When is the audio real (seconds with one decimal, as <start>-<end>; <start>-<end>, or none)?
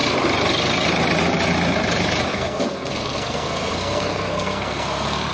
0.0-2.3